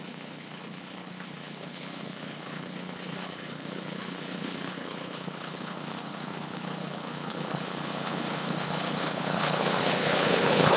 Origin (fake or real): fake